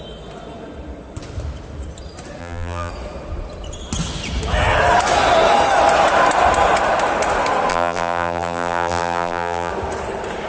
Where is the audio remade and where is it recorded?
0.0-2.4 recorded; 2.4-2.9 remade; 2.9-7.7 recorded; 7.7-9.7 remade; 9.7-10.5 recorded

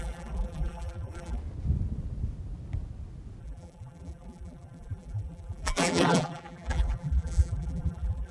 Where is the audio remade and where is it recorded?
0.0-1.4 remade; 1.4-3.4 recorded; 3.4-8.3 remade

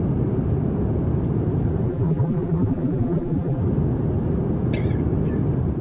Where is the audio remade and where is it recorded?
0.0-1.9 recorded; 1.9-3.6 remade; 3.6-5.8 recorded